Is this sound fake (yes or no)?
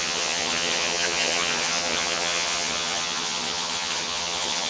yes